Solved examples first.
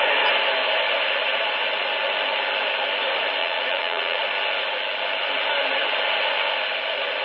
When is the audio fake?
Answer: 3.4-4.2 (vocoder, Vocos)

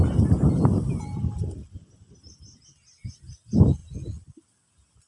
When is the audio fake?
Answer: none

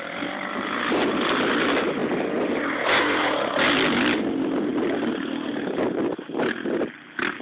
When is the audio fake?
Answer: none

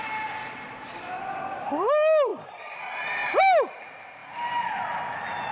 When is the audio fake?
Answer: none

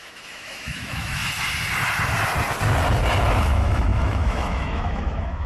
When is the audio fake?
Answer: 0.0-1.2 (autoencoder, DAC-VAE); 3.3-5.5

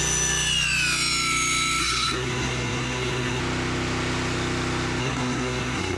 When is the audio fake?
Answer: 1.8-3.4 (codec, SNAC); 5.0-6.0